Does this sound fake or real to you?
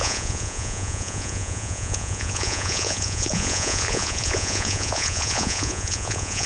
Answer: fake